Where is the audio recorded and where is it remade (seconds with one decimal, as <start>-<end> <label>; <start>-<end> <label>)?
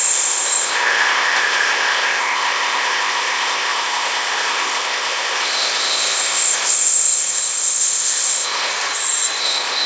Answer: 0.0-8.7 remade; 8.7-9.4 recorded; 9.4-9.9 remade